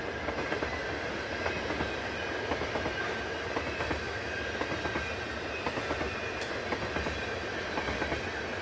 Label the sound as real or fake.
real